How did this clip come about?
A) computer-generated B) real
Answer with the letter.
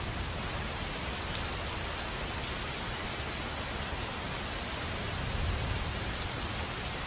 B